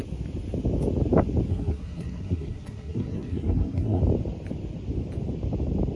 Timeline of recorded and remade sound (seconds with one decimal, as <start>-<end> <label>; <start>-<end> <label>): 0.0-1.5 recorded; 1.5-4.0 remade; 4.0-6.0 recorded